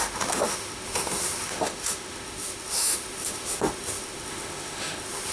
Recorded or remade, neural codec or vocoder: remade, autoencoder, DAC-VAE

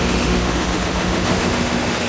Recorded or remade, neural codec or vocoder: remade, autoencoder, DAC-VAE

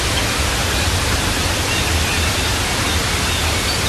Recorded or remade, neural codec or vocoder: recorded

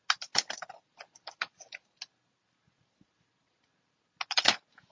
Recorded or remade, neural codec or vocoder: recorded